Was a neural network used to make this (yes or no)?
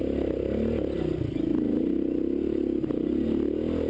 no